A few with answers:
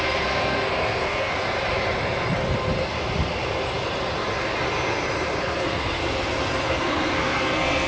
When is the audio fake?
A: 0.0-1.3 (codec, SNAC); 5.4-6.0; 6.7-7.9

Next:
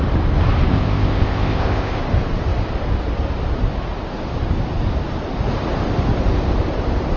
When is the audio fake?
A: 0.7-2.0 (codec, ZipCodec)

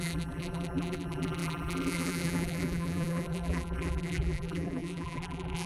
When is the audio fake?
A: 0.0-5.7 (vocoder, BigVGAN v2)